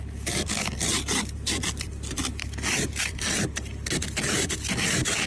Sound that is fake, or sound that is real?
fake